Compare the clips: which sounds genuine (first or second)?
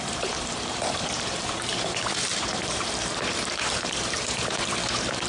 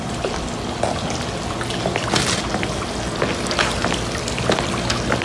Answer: second